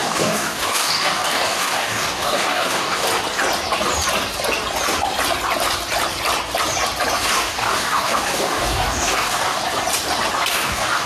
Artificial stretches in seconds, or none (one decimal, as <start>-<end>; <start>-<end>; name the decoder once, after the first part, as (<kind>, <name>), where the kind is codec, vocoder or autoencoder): 0.0-3.1 (codec, DAC); 7.2-9.6; 10.5-11.1

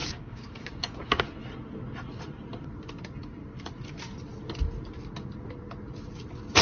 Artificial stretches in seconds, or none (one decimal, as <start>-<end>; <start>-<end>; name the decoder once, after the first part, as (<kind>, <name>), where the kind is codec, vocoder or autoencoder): 0.0-1.2 (codec, DAC)

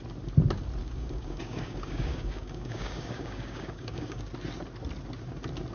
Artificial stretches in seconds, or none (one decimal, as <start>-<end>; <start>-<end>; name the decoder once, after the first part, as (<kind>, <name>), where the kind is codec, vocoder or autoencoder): 0.8-4.2 (codec, DAC)

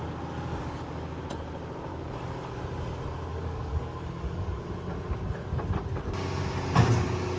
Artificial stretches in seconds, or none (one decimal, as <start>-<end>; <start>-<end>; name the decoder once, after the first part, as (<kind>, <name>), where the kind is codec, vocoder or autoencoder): 0.0-1.2 (codec, DAC); 1.9-2.6; 3.3-4.7

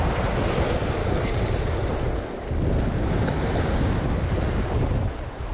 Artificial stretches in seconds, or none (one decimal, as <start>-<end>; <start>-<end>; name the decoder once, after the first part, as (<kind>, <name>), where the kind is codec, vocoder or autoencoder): 1.0-1.6 (codec, DAC)

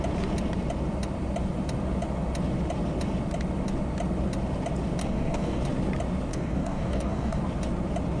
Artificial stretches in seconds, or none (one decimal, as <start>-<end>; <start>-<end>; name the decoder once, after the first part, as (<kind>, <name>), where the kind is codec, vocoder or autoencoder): 5.0-5.6 (codec, DAC); 6.3-7.4

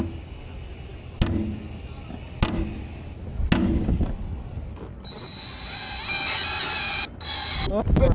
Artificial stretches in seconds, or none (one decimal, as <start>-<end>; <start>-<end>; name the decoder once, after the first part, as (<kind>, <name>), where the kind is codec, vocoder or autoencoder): none

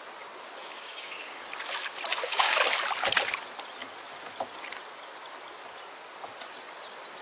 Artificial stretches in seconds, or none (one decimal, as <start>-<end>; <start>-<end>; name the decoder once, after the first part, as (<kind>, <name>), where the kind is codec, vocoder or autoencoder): 0.6-1.4 (codec, DAC); 2.1-2.6